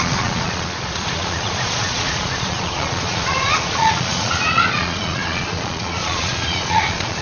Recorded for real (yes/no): no